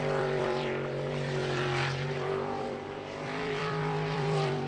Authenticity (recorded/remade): remade